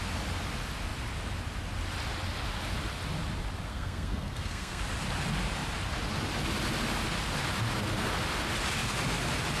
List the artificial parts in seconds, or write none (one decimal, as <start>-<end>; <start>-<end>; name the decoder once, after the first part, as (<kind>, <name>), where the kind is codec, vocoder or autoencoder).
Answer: 3.7-4.8 (codec, SNAC)